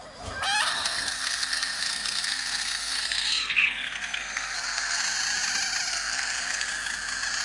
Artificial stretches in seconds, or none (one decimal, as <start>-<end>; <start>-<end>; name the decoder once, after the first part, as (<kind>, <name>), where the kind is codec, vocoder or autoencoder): 0.7-5.0 (codec, SNAC); 5.9-6.7